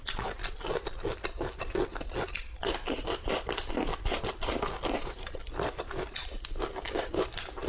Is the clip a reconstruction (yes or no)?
no